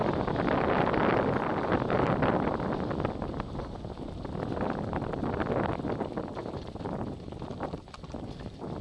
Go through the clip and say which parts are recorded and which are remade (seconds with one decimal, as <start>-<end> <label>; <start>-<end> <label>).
0.0-8.8 recorded